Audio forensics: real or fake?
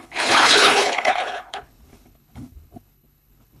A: fake